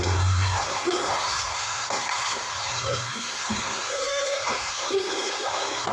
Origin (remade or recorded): remade